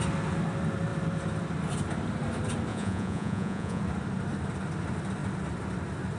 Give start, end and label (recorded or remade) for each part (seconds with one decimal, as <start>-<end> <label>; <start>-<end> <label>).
0.0-2.7 recorded; 2.7-3.8 remade; 3.8-6.2 recorded